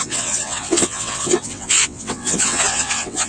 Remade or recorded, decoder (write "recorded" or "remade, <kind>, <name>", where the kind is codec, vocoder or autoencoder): remade, vocoder, WaveNeXt